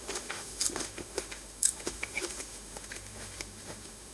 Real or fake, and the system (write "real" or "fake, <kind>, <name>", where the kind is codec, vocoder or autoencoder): fake, autoencoder, DAC-VAE